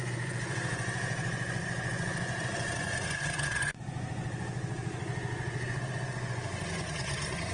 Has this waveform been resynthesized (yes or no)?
yes